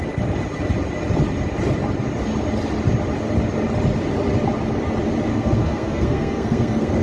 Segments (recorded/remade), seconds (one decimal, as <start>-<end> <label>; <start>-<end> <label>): 0.0-5.3 recorded; 5.3-7.0 remade